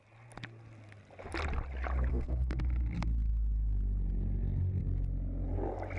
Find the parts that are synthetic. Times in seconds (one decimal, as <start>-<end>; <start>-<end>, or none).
2.1-2.6